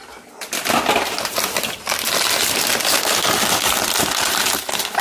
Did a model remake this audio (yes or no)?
no